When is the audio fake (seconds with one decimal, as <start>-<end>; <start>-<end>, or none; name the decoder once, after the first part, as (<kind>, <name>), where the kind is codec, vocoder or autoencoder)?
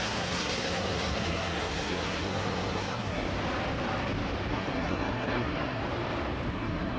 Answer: 0.0-3.3 (codec, SNAC); 4.5-5.8; 6.5-7.0